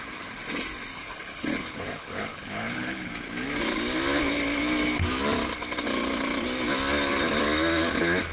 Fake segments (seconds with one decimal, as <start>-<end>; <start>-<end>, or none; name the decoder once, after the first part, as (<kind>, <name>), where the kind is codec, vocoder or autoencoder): 0.9-3.1 (codec, HILCodec)